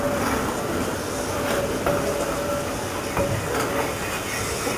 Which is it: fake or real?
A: real